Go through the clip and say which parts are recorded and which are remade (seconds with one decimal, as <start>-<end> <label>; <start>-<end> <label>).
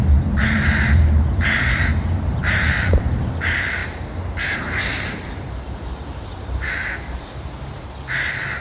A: 0.0-3.8 remade; 3.8-4.4 recorded; 4.4-8.6 remade